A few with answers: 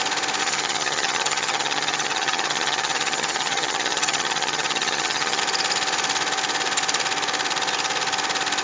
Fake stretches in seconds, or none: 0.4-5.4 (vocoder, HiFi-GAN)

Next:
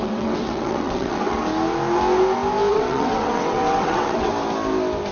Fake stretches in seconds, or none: 0.0-1.4 (vocoder, WaveNeXt); 2.7-4.3

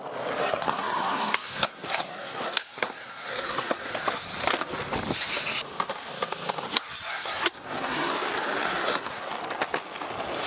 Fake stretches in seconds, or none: 0.4-3.9 (codec, SNAC); 7.1-8.1; 8.6-9.3

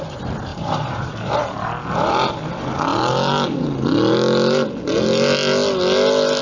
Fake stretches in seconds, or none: 0.5-1.4 (vocoder, BigVGAN v2)

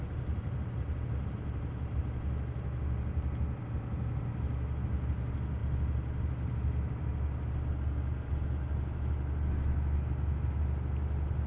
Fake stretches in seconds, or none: none

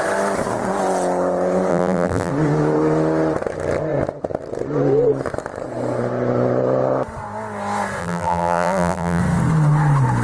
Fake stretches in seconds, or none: 1.7-2.3 (vocoder, BigVGAN v2); 8.0-9.2